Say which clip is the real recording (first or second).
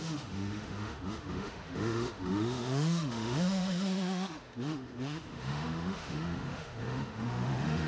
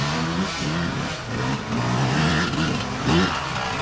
second